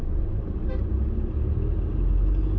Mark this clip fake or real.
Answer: real